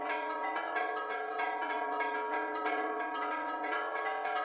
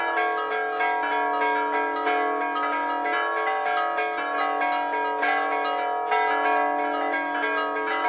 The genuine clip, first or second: second